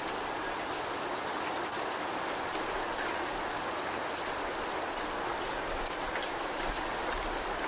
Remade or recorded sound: recorded